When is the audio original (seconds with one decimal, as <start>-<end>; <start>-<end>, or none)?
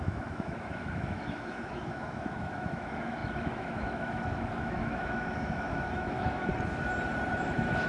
6.5-7.4